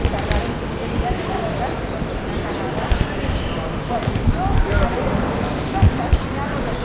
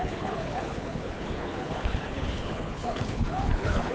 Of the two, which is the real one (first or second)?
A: first